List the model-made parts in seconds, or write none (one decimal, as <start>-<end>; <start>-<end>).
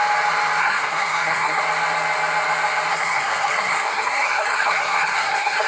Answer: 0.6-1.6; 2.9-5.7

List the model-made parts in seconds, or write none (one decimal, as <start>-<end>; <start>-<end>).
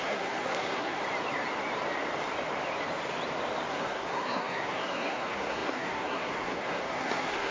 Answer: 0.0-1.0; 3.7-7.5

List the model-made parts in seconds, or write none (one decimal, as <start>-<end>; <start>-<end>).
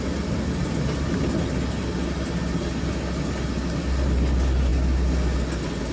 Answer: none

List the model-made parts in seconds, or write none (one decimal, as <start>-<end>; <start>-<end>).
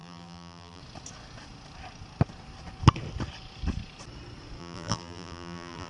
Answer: 0.0-0.8; 4.6-5.9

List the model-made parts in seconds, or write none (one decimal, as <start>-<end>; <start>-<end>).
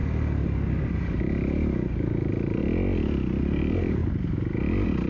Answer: 0.8-2.6; 3.4-4.0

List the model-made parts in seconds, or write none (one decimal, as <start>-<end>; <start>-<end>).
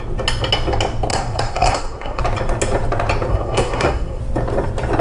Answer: 1.1-2.2; 3.3-4.2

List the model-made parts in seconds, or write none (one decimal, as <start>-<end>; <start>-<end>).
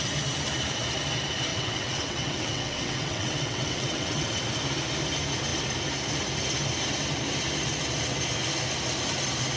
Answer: 1.5-4.4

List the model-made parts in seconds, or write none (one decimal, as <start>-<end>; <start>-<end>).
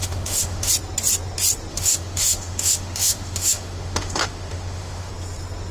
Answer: 0.0-0.7; 1.7-5.1